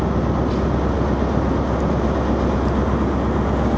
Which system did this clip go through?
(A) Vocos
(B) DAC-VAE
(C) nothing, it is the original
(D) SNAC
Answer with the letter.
C